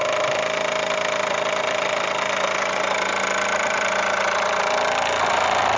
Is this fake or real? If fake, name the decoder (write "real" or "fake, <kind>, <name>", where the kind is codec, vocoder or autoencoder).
real